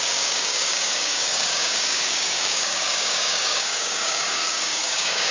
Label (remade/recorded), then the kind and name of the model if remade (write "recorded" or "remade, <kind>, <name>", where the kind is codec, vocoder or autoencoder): remade, codec, DAC